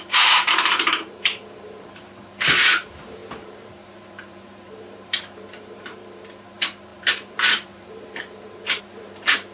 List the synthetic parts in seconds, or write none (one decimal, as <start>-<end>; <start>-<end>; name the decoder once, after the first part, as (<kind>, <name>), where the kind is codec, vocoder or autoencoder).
0.0-9.5 (vocoder, BigVGAN v2)